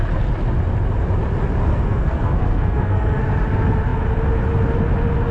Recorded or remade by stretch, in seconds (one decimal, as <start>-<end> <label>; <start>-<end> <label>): 0.0-1.7 recorded; 1.7-3.2 remade; 3.2-5.3 recorded